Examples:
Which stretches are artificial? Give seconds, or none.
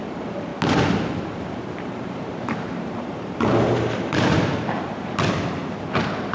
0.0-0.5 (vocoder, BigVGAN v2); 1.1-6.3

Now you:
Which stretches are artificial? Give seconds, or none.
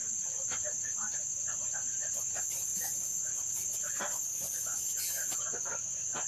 0.0-2.2 (vocoder, BigVGAN v2)